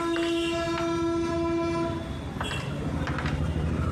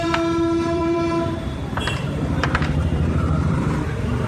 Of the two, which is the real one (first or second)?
first